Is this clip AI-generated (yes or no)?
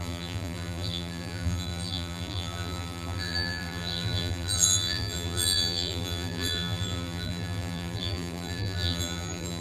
yes